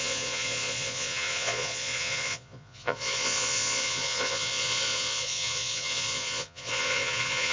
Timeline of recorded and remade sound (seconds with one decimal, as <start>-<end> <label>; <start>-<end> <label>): 0.0-7.5 remade